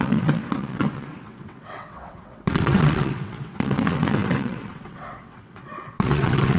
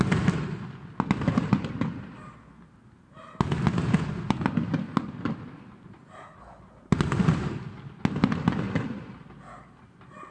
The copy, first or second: first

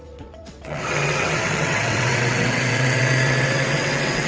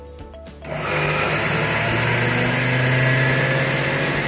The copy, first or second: first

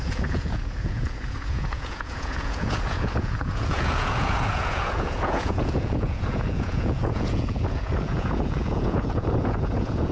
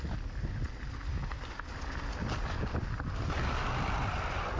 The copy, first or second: first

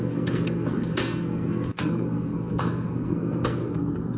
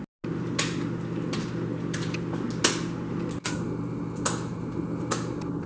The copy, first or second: first